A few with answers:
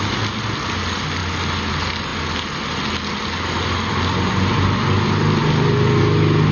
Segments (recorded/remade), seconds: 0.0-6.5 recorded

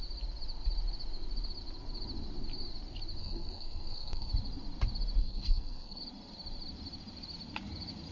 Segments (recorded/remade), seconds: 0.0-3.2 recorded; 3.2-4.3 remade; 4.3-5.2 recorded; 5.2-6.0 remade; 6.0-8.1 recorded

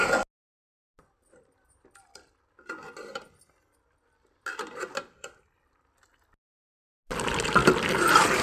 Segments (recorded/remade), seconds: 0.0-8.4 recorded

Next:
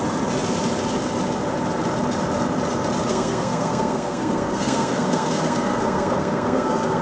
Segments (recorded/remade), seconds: 0.0-3.1 recorded; 3.1-7.0 remade

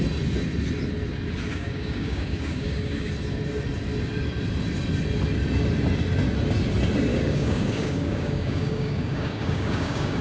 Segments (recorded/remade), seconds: 0.0-1.5 recorded; 1.5-3.1 remade; 3.1-7.1 recorded; 7.1-10.2 remade

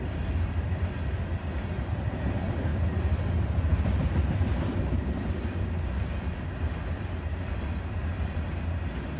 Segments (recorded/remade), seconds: 0.0-1.3 remade; 1.3-2.2 recorded; 2.2-9.2 remade

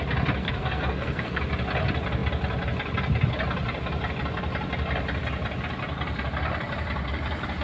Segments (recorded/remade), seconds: 0.0-0.4 recorded; 0.4-1.4 remade; 1.4-7.6 recorded

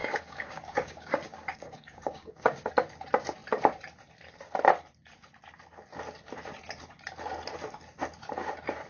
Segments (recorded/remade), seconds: 0.0-2.7 remade; 2.7-8.9 recorded